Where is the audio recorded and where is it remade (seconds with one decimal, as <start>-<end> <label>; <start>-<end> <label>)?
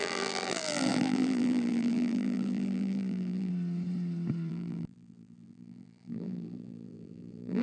0.0-3.5 remade; 3.5-4.5 recorded; 4.5-7.6 remade